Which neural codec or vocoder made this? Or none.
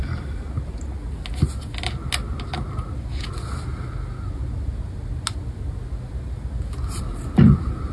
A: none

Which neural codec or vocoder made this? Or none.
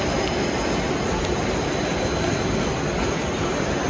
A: none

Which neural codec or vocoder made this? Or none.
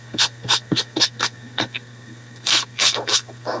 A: codec, SNAC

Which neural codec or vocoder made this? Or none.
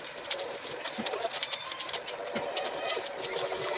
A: vocoder, BigVGAN v2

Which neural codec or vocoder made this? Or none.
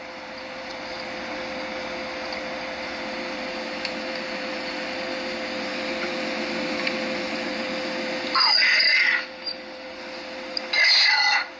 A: none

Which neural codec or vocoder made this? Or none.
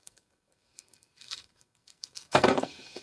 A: codec, SNAC